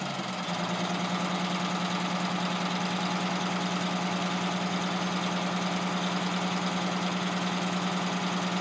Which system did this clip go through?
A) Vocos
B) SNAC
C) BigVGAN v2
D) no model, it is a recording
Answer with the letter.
D